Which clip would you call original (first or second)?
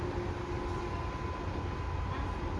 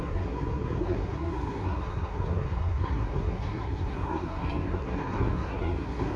first